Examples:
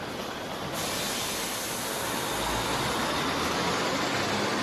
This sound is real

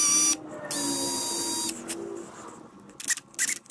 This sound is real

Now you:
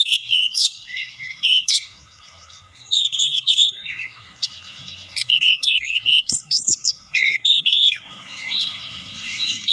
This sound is fake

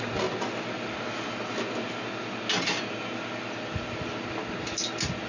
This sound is real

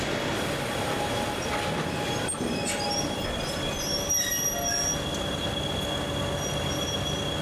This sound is real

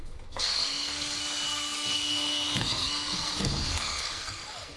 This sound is fake